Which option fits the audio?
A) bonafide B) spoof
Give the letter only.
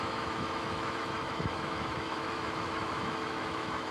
B